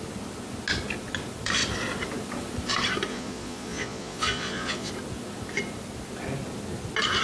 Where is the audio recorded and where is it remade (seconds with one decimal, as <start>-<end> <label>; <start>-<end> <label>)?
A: 0.0-3.1 recorded; 3.1-4.9 remade; 4.9-7.2 recorded